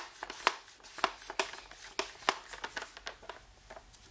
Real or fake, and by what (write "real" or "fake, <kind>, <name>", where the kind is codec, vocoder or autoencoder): real